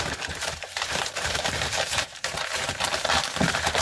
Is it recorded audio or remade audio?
remade